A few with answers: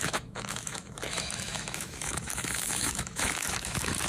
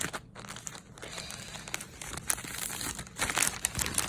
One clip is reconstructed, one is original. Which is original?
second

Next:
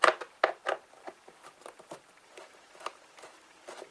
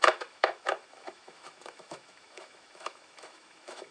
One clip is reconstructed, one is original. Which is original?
first